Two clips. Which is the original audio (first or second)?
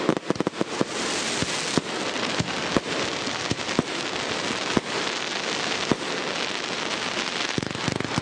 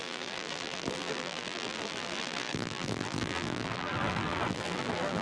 first